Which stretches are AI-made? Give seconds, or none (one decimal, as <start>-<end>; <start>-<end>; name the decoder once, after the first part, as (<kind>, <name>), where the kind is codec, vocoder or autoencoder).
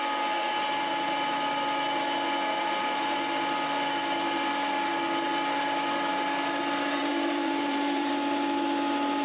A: 7.0-8.1 (vocoder, BigVGAN v2)